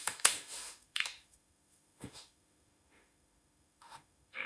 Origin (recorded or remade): remade